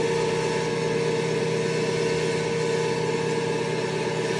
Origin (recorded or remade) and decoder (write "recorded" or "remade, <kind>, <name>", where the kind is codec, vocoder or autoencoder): recorded